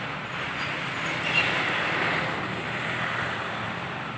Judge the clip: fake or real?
real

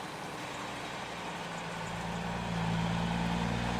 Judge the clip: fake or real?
real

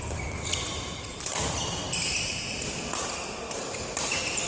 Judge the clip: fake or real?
fake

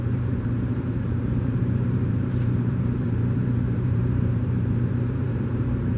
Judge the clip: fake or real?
fake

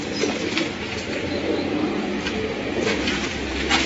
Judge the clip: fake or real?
fake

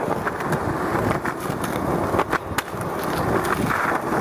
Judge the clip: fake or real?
real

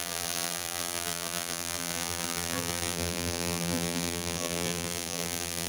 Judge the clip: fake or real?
fake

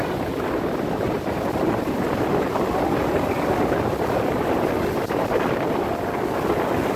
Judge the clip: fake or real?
real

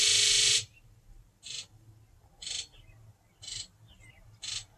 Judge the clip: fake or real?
fake